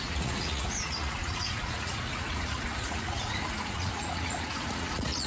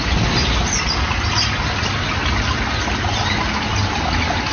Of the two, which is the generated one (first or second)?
first